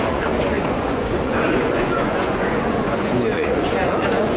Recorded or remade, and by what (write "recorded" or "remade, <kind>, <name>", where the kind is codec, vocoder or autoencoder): remade, vocoder, Vocos